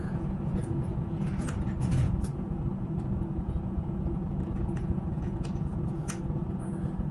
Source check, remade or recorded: remade